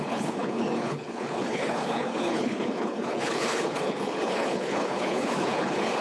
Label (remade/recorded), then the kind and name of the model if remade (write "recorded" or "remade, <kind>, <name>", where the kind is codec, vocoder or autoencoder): remade, codec, HILCodec